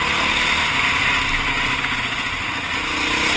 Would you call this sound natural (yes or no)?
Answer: yes